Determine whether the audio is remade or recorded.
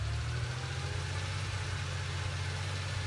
recorded